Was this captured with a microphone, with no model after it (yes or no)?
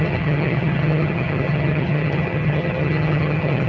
no